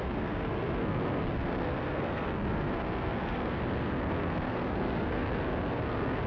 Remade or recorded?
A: remade